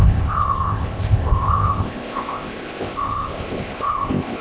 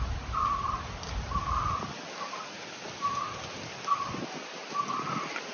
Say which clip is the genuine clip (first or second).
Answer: second